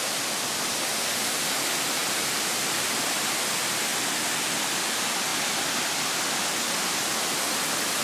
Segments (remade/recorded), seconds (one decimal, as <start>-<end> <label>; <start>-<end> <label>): 0.0-2.0 recorded; 2.0-3.1 remade; 3.1-8.0 recorded